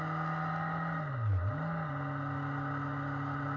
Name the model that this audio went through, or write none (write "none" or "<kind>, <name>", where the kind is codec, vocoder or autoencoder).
none